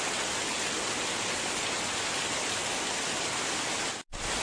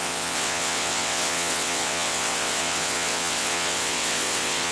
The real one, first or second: first